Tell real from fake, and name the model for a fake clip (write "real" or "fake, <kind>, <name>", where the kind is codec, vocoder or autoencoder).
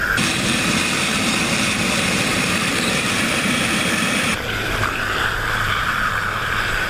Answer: fake, vocoder, BigVGAN v2